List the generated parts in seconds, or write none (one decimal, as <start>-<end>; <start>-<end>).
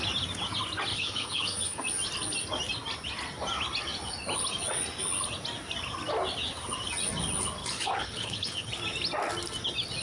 0.9-1.8; 7.6-8.7